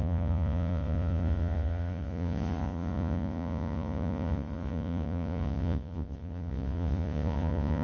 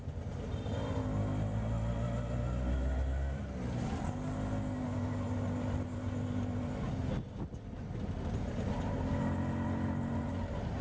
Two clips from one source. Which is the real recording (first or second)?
second